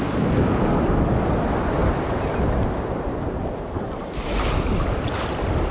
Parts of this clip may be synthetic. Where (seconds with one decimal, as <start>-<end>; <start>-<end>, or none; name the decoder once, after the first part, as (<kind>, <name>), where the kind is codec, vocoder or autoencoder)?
none